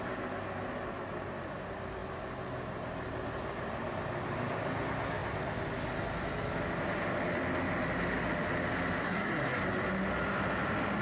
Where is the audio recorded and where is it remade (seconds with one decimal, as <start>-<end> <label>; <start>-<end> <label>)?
0.0-9.0 recorded; 9.0-9.6 remade; 9.6-11.0 recorded